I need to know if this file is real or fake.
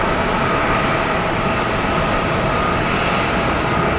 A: real